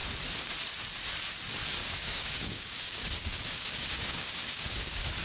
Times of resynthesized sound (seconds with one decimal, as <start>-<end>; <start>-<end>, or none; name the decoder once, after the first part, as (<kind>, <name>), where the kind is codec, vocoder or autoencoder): 1.8-5.2 (codec, DAC)